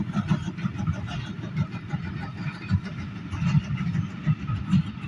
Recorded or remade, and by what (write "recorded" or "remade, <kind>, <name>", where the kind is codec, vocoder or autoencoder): recorded